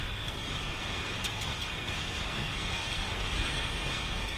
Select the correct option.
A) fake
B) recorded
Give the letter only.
A